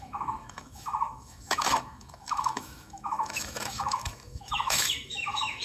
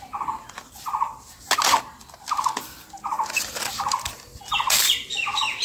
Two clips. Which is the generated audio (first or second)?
first